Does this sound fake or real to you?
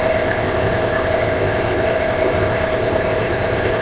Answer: fake